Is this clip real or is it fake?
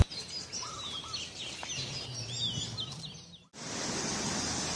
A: real